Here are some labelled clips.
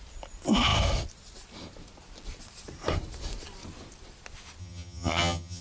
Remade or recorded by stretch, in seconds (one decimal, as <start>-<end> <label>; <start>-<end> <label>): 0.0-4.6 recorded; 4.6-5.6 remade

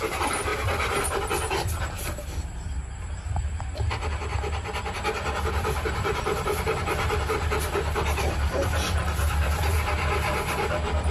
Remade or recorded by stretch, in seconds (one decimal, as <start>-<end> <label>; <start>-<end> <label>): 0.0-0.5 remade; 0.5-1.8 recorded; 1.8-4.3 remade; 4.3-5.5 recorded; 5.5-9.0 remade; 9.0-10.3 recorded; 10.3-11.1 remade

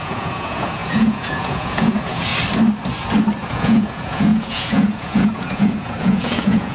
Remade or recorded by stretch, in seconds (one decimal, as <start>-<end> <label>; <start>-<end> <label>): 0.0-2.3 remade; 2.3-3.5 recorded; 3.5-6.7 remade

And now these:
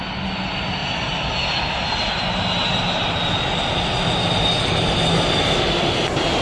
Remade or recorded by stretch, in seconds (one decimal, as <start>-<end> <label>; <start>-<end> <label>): 0.0-6.4 recorded